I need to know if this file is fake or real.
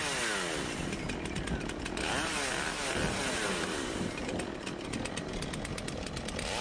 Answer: real